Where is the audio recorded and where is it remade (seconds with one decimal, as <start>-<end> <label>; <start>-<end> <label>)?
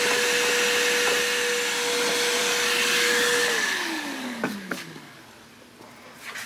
0.0-2.4 recorded; 2.4-5.2 remade; 5.2-6.5 recorded